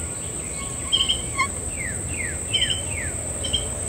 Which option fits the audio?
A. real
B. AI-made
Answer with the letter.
A